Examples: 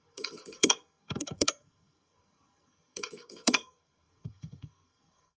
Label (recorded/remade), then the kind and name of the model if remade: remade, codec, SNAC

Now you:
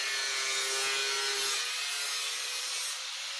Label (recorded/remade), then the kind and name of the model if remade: recorded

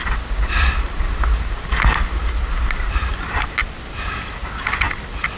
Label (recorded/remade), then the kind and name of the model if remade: recorded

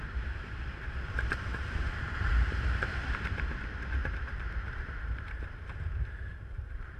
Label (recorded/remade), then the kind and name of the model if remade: remade, vocoder, BigVGAN v2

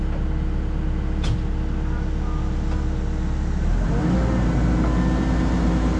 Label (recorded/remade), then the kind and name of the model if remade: recorded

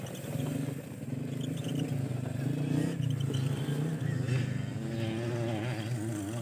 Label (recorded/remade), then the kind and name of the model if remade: recorded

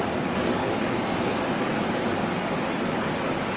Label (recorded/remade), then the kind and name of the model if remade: remade, codec, DAC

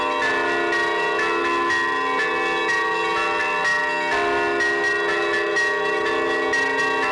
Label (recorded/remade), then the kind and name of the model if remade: recorded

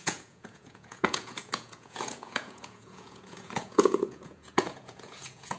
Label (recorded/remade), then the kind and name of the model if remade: remade, vocoder, Vocos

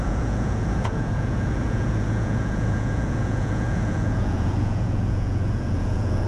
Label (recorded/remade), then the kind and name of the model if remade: remade, vocoder, Vocos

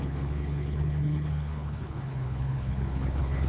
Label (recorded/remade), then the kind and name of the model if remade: remade, codec, HILCodec